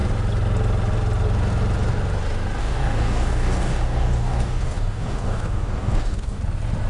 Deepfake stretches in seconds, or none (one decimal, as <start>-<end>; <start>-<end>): 2.6-6.4

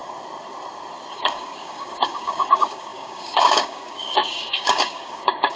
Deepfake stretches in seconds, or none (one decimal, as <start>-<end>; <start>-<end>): 1.1-5.6